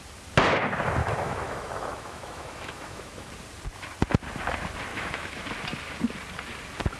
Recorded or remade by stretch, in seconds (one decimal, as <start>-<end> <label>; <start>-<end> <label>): 0.0-1.0 recorded; 1.0-3.3 remade; 3.3-4.9 recorded; 4.9-5.4 remade; 5.4-7.0 recorded